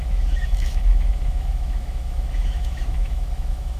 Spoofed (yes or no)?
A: yes